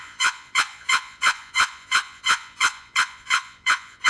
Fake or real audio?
fake